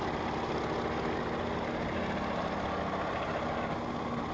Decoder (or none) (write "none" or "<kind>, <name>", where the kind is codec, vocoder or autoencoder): none